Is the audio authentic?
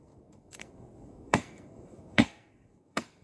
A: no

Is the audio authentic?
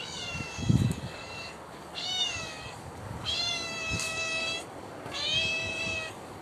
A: no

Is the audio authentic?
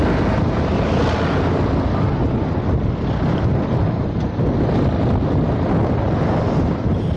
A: yes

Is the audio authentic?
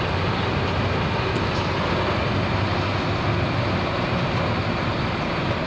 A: yes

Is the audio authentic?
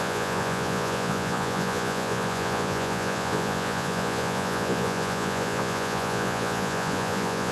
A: no